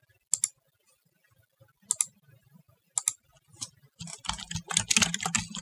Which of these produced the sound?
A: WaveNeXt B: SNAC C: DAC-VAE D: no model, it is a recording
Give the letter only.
D